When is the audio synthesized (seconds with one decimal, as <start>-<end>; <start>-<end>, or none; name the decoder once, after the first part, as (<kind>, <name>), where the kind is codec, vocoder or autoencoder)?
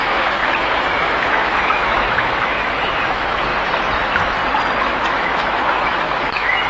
0.0-3.5 (autoencoder, DAC-VAE); 4.8-6.7